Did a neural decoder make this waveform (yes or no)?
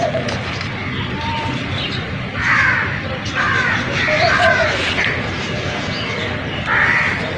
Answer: no